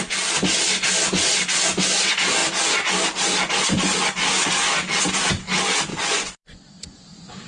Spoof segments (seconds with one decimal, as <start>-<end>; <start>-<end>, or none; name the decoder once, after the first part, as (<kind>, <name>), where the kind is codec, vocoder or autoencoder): 5.9-7.5 (vocoder, Vocos)